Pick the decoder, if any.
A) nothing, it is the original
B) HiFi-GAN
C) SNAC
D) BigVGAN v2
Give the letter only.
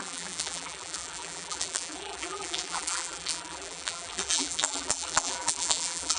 D